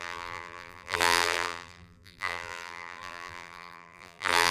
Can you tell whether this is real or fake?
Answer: fake